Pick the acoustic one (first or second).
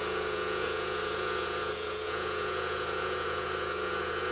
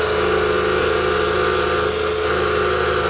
second